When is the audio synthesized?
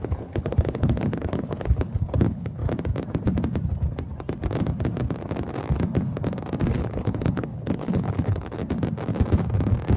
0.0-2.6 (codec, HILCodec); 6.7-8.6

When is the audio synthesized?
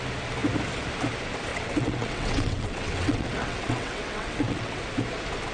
1.5-4.8 (vocoder, WaveNeXt)